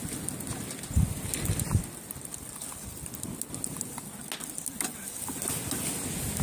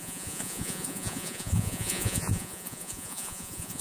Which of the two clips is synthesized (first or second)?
second